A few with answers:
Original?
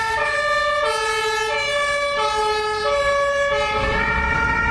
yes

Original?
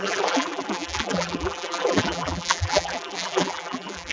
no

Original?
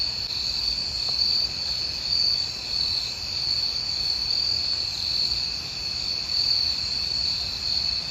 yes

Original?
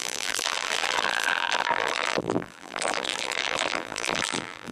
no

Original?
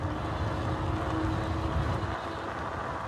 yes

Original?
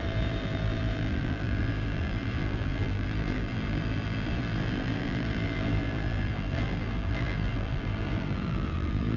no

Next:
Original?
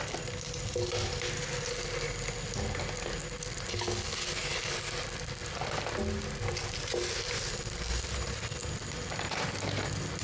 yes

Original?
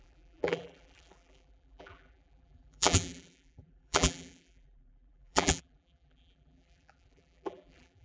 no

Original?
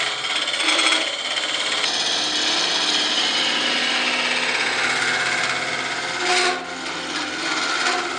yes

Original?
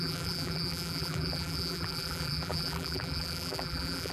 no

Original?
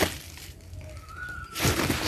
yes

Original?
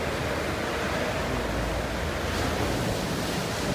yes